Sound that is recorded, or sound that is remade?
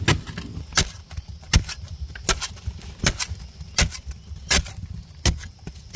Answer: recorded